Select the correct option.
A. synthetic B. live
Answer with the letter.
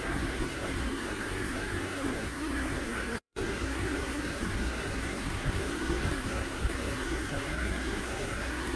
A